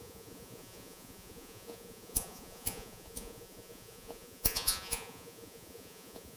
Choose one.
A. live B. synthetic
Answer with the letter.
B